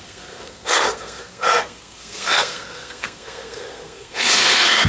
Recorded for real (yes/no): no